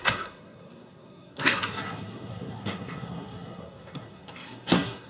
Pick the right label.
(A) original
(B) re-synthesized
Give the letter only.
B